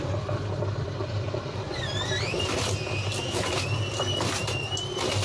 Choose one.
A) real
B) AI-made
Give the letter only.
B